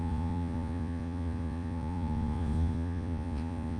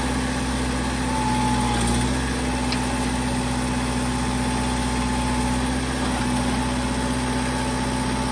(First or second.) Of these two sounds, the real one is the second